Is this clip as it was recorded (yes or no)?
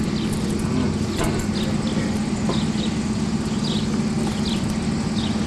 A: yes